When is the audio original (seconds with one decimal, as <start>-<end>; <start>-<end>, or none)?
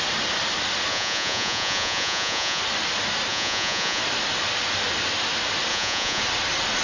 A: 0.0-0.9; 2.6-3.3; 4.0-5.7; 6.2-6.8